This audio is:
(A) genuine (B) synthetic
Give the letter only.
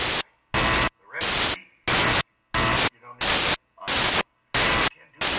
A